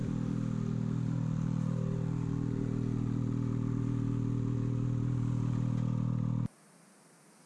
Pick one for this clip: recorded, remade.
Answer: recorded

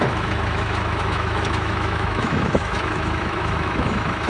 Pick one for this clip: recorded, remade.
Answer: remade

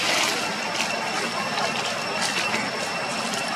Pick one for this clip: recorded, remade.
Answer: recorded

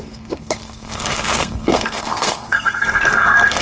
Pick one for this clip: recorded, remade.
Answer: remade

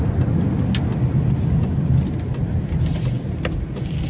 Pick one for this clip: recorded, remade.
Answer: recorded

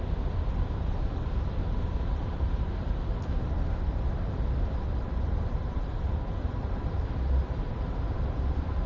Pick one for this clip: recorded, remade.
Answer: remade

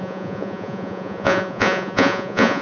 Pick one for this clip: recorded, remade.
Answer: remade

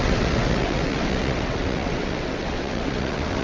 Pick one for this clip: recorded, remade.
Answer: remade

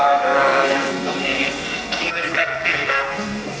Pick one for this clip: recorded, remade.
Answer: remade